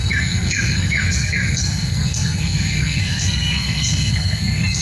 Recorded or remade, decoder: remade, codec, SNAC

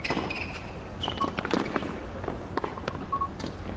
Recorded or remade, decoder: recorded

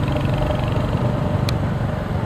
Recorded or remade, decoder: recorded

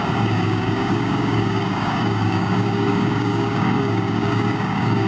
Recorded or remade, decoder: remade, codec, DAC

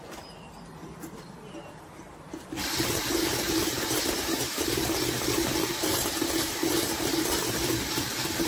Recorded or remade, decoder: remade, vocoder, BigVGAN v2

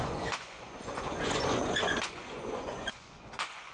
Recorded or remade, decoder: remade, vocoder, Vocos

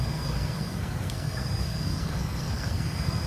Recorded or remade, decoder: remade, codec, SNAC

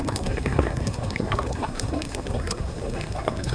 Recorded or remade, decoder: remade, codec, SNAC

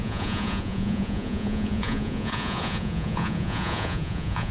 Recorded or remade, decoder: remade, vocoder, Vocos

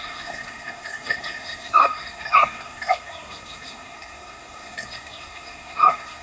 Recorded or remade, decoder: remade, codec, SNAC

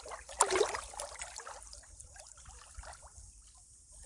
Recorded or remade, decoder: recorded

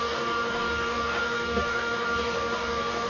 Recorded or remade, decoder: remade, codec, DAC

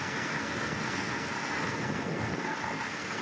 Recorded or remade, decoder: remade, codec, SNAC